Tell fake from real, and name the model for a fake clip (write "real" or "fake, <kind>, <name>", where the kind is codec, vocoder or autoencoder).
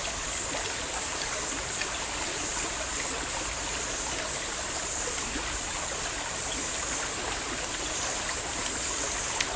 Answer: real